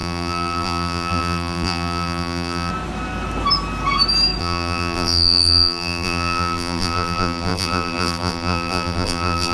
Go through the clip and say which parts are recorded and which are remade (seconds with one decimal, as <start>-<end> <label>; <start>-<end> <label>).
0.0-2.7 remade; 2.7-4.4 recorded; 4.4-9.5 remade